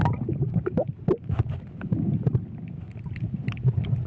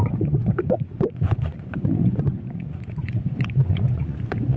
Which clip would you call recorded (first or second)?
first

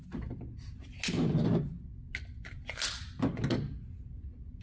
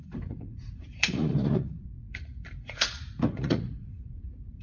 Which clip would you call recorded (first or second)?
first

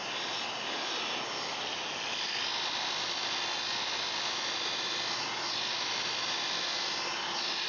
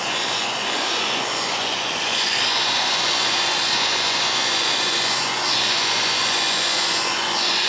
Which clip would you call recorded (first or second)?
first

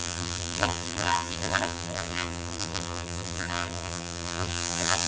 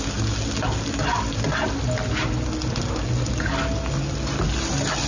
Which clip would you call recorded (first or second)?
second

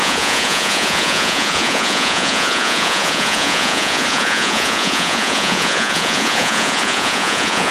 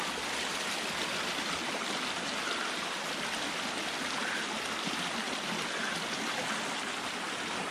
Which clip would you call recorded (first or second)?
second